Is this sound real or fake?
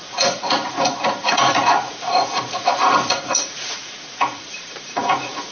fake